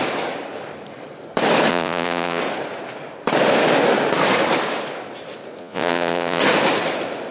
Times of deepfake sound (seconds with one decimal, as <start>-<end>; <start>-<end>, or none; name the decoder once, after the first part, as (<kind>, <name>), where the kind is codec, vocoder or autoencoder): 1.7-2.4 (vocoder, Vocos); 5.6-6.4

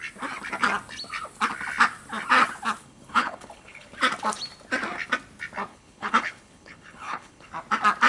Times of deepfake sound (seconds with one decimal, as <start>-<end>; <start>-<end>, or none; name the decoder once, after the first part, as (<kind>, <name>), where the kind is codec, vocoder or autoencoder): 2.8-3.9 (codec, HILCodec); 5.7-7.5